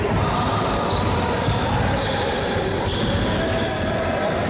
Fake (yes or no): no